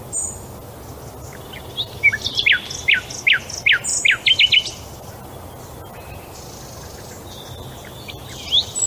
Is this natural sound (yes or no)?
yes